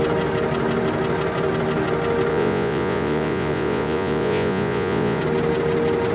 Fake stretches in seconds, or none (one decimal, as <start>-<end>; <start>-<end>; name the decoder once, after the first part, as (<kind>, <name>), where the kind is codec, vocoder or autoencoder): 2.3-5.2 (vocoder, Vocos)